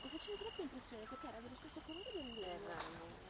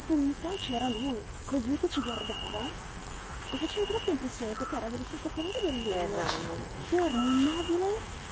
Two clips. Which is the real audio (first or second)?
first